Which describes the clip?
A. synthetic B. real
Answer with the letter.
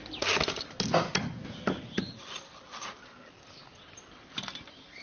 B